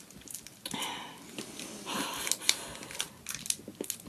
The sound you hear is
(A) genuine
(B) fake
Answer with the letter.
A